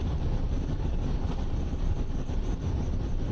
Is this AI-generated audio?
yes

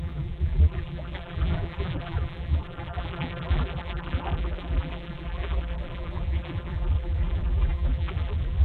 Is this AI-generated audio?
yes